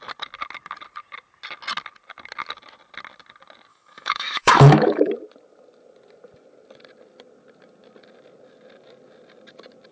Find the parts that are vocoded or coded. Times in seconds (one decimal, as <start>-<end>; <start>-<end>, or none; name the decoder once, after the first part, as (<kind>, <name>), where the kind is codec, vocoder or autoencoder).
3.7-5.1 (autoencoder, DAC-VAE)